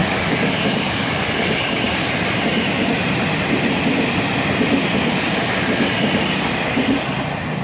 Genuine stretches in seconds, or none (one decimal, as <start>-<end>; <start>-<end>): 1.9-7.6